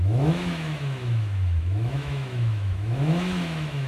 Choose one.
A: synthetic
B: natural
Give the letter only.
A